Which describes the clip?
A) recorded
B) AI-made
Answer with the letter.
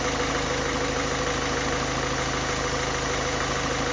A